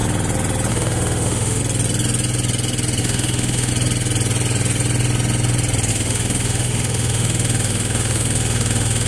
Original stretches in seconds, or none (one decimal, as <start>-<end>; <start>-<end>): 0.0-0.7; 1.6-3.0; 3.7-5.9